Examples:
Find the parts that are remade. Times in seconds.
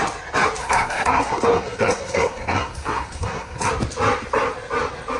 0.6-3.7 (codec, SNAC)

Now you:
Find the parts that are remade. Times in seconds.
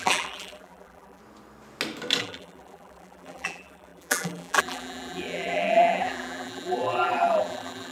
0.0-1.2 (vocoder, BigVGAN v2); 2.2-7.9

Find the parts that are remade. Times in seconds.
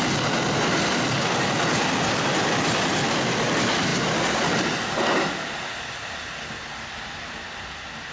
none